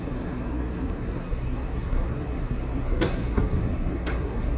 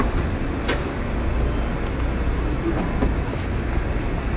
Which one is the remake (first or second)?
first